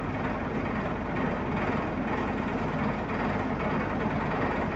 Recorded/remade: recorded